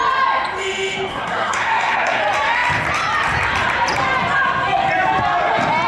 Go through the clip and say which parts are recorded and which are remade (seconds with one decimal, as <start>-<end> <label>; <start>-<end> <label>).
0.0-1.1 recorded; 1.1-2.2 remade; 2.2-5.9 recorded